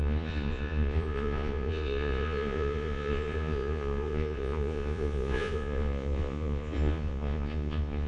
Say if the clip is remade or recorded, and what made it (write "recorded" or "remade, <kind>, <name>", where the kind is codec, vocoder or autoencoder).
remade, vocoder, Vocos